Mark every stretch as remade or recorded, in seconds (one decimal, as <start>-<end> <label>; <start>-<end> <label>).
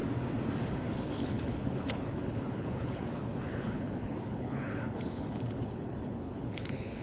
0.0-1.0 recorded; 1.0-7.0 remade